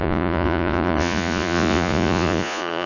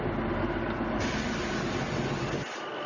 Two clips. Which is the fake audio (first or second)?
first